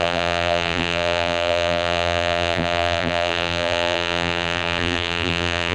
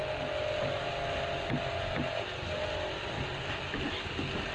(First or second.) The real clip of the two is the second